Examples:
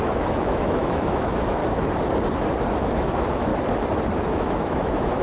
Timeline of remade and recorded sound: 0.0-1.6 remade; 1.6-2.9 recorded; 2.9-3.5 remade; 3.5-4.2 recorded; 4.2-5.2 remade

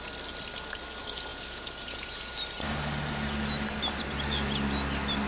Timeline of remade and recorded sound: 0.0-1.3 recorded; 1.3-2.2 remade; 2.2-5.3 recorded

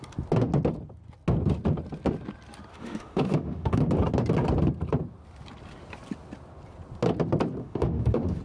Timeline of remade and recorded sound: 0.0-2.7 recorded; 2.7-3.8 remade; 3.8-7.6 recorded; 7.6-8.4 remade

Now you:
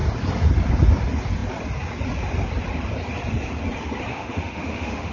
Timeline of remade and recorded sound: 0.0-4.1 recorded; 4.1-5.1 remade